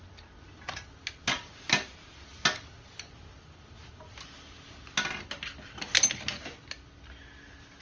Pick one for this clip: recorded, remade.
recorded